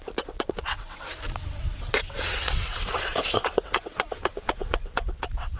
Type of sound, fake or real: fake